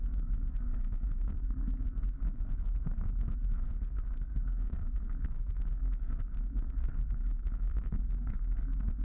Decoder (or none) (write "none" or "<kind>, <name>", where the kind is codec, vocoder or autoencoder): codec, SNAC